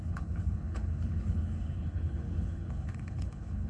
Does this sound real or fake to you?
fake